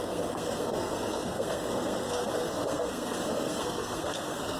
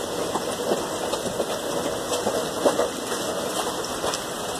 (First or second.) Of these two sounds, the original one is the second